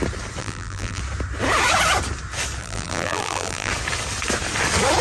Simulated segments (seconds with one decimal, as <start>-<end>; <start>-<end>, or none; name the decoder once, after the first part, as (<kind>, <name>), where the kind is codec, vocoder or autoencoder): 0.4-1.0 (vocoder, BigVGAN v2); 2.6-3.7